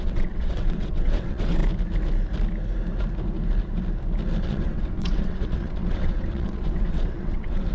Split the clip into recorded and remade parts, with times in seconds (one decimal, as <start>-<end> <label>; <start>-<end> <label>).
0.0-1.6 remade; 1.6-4.4 recorded; 4.4-7.7 remade